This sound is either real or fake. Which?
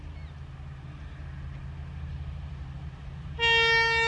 real